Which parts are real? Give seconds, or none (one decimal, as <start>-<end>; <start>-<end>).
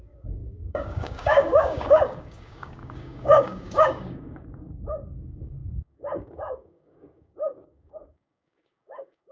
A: none